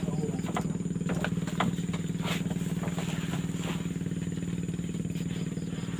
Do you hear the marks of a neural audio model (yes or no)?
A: no